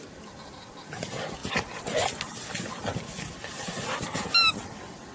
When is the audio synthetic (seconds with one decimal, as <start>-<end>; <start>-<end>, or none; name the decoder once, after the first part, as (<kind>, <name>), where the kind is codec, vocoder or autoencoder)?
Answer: none